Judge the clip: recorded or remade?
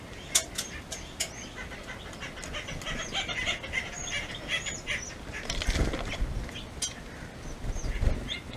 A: recorded